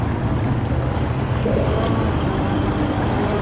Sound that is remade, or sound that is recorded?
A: recorded